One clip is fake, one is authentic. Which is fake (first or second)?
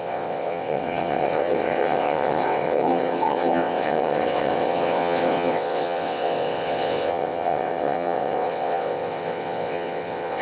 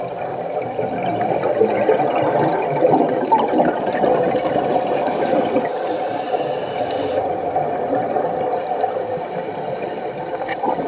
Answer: first